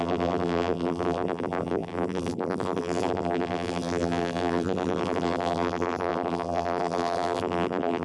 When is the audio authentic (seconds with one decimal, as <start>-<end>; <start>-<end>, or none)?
none